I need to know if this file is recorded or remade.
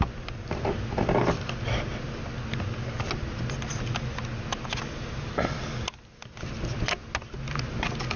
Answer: recorded